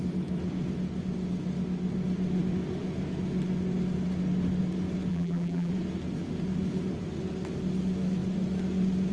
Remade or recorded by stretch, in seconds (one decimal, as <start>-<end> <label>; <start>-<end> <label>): 0.0-5.1 recorded; 5.1-5.7 remade; 5.7-9.1 recorded